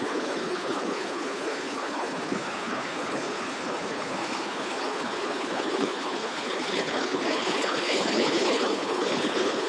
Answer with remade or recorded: remade